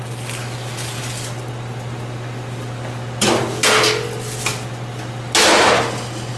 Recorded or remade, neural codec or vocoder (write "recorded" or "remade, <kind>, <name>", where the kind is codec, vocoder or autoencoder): recorded